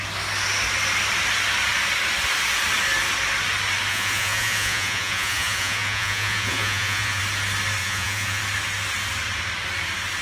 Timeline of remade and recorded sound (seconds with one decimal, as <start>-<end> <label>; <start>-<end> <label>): 0.0-3.9 recorded; 3.9-7.2 remade; 7.2-7.8 recorded; 7.8-8.4 remade; 8.4-10.2 recorded